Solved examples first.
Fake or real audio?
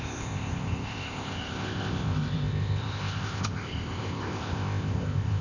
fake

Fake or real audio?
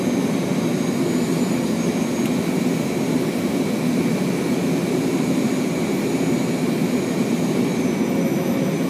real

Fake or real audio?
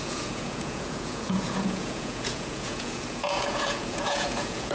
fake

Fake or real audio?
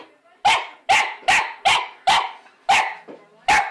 real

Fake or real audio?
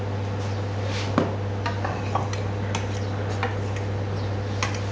real